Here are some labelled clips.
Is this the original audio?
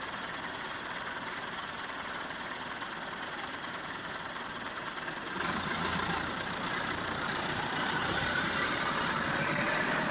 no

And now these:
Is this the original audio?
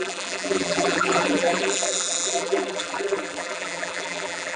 no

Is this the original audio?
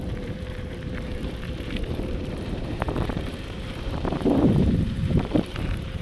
no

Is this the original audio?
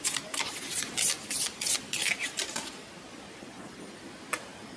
yes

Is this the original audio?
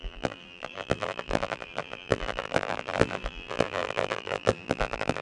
no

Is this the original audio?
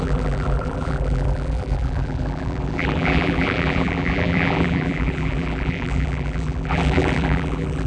no